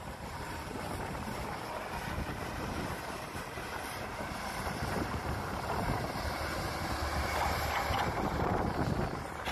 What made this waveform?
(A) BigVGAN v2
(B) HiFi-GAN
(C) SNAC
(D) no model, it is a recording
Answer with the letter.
A